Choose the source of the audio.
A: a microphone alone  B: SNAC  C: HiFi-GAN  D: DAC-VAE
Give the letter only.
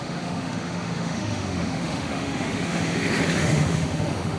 D